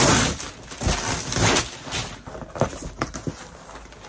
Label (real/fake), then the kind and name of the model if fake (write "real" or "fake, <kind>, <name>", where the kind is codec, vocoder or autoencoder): real